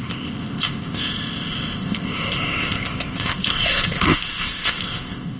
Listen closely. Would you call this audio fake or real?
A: fake